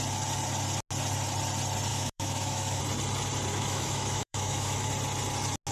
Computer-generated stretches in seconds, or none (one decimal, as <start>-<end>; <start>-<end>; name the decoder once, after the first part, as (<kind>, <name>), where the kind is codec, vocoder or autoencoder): 1.9-2.8 (autoencoder, DAC-VAE); 3.5-4.9